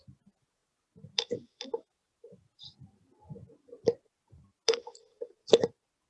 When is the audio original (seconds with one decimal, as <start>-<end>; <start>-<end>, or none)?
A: 0.0-6.1